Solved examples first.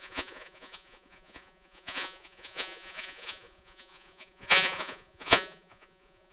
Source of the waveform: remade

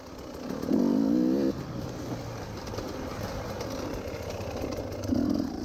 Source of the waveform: recorded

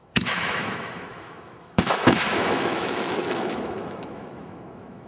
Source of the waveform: remade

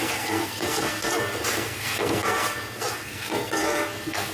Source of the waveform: remade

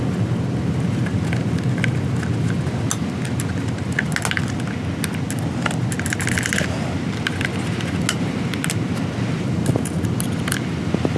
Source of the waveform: recorded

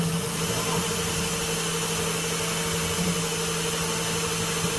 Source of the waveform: recorded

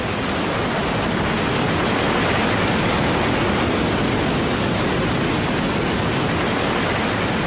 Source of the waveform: recorded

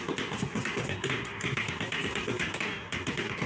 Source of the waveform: remade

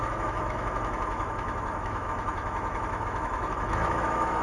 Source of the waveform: remade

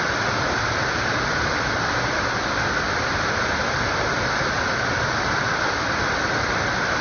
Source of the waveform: recorded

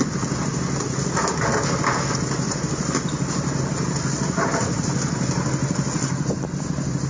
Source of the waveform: recorded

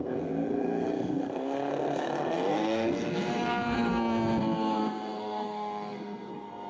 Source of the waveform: remade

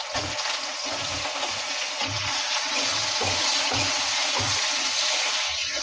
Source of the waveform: remade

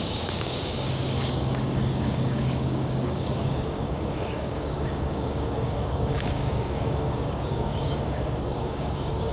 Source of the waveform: remade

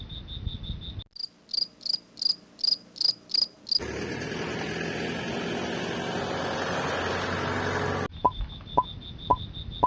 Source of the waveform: recorded